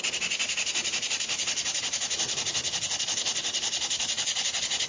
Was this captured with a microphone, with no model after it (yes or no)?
yes